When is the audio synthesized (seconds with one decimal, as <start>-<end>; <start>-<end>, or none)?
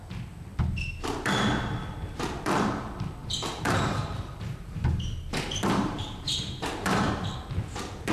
3.2-7.2